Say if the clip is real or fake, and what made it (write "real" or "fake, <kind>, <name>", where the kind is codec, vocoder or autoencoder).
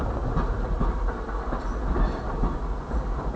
real